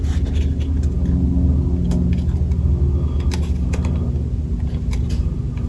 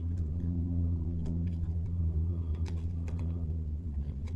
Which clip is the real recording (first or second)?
first